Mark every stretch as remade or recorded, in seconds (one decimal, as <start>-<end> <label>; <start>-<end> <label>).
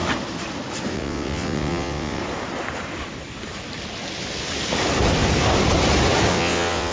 0.0-0.9 recorded; 0.9-2.2 remade; 2.2-6.3 recorded; 6.3-6.9 remade